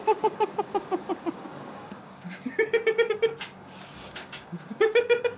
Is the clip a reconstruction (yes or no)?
yes